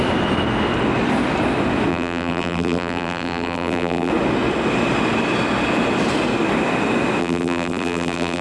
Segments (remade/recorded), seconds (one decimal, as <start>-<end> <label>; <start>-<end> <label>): 0.0-1.9 recorded; 1.9-4.1 remade; 4.1-7.2 recorded; 7.2-8.4 remade